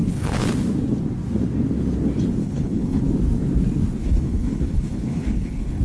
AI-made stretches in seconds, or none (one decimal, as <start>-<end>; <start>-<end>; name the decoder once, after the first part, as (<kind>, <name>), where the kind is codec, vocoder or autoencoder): 0.0-0.5 (codec, HILCodec); 2.4-3.0; 4.0-5.8